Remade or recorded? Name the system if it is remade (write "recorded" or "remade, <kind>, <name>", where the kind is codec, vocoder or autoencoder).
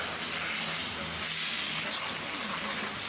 recorded